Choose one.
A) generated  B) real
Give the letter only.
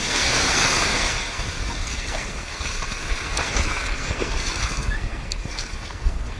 A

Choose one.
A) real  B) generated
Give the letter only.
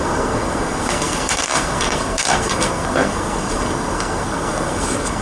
B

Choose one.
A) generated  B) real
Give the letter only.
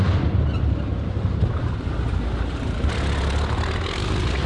B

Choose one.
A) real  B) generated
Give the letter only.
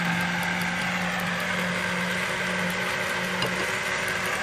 A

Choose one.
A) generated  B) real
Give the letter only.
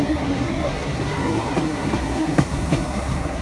A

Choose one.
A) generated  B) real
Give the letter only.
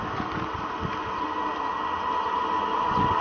B